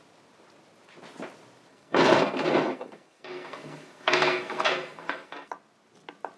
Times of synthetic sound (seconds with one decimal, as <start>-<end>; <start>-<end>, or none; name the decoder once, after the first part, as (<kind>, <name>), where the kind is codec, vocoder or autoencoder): 1.7-5.5 (codec, SNAC)